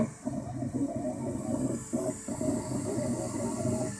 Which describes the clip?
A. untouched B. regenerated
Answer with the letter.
A